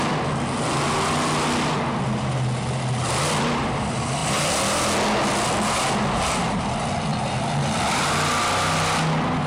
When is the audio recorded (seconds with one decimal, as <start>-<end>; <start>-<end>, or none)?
0.0-9.5